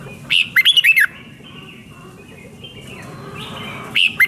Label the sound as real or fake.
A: real